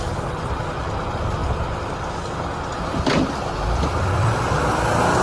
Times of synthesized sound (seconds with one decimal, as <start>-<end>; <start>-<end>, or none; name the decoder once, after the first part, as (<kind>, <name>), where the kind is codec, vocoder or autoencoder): 2.8-4.4 (vocoder, BigVGAN v2)